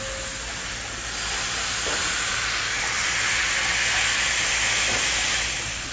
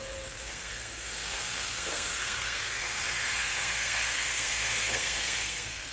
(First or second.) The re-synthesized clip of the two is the second